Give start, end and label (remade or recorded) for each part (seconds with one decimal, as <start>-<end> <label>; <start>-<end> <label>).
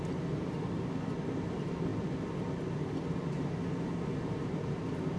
0.0-5.2 recorded